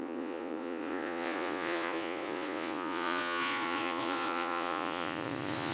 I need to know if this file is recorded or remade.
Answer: remade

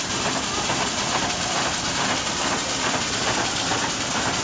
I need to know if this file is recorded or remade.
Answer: remade